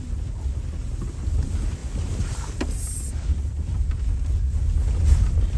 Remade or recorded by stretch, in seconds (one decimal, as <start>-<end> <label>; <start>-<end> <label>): 0.0-5.6 recorded